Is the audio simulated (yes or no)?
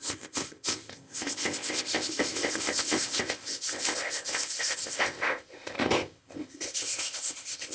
yes